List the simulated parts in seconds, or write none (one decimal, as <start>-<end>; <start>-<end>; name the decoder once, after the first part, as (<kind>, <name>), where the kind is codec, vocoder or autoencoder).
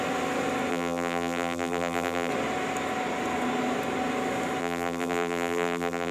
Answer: 0.7-2.3 (vocoder, BigVGAN v2); 4.6-6.1